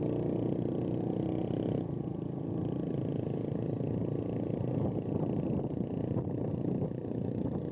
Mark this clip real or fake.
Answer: real